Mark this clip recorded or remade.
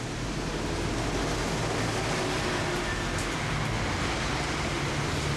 recorded